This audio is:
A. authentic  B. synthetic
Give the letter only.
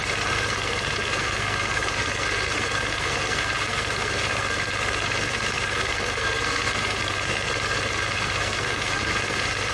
B